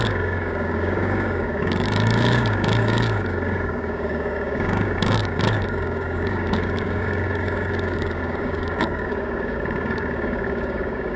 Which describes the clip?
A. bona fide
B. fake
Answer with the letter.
B